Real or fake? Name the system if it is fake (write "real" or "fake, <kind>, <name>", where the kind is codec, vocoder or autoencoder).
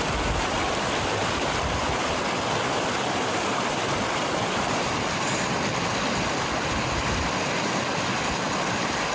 fake, vocoder, BigVGAN v2